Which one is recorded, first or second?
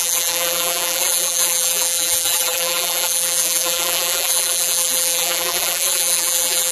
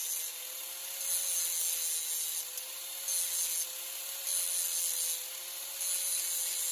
second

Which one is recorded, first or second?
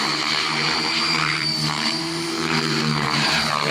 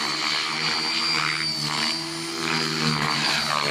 second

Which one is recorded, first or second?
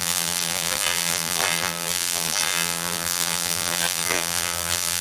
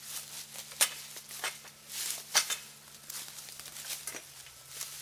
second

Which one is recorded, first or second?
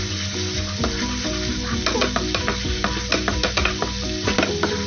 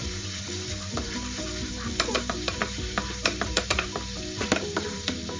first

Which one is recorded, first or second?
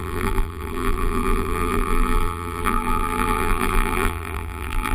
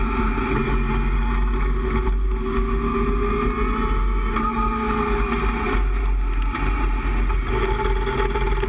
second